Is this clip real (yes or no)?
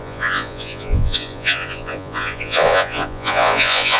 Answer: no